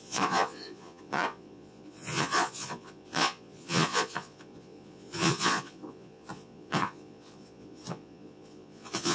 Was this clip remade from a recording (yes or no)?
yes